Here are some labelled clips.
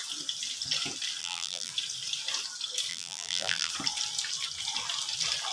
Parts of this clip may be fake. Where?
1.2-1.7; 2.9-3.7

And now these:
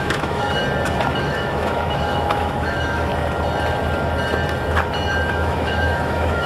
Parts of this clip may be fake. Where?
0.0-0.6; 1.2-3.1; 5.3-6.5

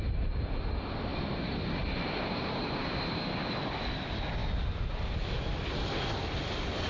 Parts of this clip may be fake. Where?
1.1-3.3